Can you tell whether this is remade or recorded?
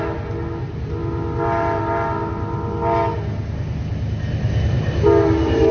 recorded